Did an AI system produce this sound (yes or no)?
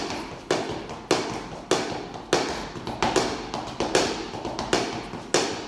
no